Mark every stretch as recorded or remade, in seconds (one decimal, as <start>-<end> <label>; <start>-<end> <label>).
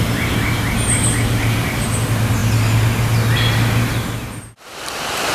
0.0-5.3 recorded